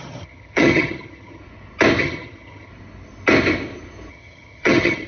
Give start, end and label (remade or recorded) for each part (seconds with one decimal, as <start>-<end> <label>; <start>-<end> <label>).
0.0-1.4 remade; 1.4-2.0 recorded; 2.0-2.7 remade; 2.7-4.1 recorded; 4.1-5.1 remade